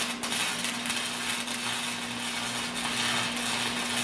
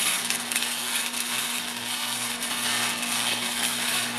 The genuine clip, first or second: first